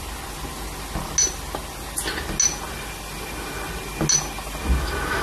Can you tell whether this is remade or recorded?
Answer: recorded